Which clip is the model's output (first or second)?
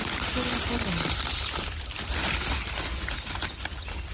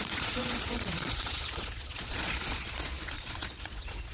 second